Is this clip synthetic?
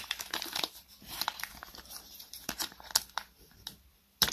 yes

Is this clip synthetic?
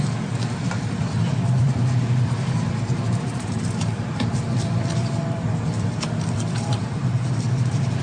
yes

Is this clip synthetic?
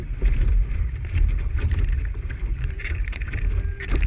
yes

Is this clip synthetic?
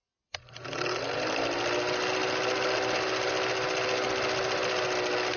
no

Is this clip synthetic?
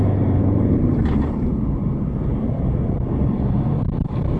yes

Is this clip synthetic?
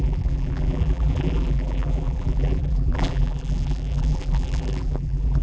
yes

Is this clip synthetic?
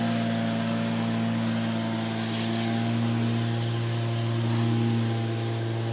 no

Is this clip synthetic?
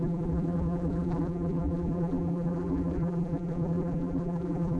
yes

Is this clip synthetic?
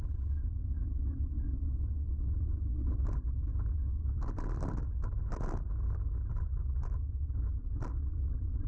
no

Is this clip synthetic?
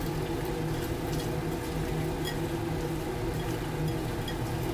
no